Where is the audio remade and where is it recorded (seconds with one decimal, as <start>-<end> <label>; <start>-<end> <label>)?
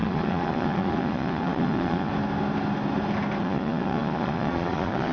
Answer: 0.0-2.1 remade; 2.1-3.4 recorded; 3.4-5.1 remade